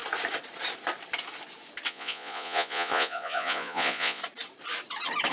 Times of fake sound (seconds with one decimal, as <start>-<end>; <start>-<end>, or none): 1.9-4.2